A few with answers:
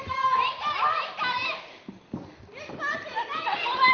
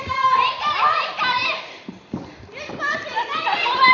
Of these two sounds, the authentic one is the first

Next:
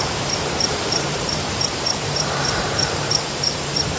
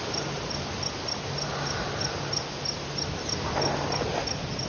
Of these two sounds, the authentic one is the second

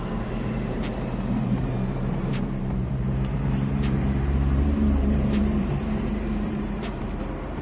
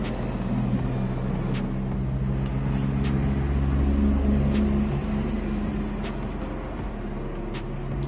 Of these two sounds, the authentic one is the second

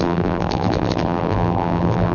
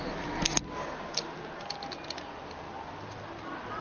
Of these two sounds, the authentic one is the second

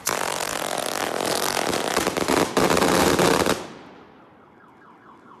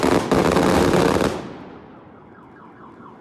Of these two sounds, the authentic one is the second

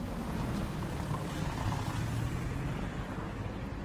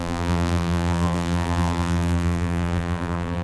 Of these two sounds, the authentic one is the first